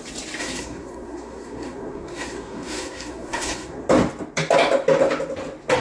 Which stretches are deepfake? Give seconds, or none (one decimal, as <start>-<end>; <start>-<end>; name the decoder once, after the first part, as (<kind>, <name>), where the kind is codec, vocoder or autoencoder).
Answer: 0.4-3.9 (codec, SNAC)